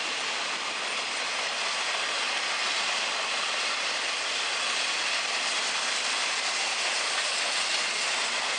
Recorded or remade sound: recorded